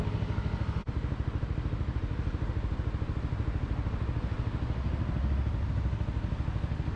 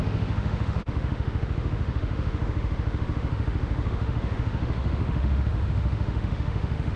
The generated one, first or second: second